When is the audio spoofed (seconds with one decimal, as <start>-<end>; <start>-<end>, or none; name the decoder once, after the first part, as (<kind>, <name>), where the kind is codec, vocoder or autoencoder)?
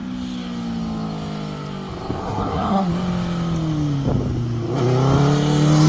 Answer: 2.2-2.9 (codec, SNAC)